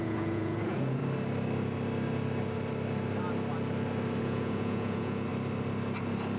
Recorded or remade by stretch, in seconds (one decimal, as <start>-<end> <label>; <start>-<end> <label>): 0.0-1.0 remade; 1.0-4.2 recorded; 4.2-5.3 remade; 5.3-6.4 recorded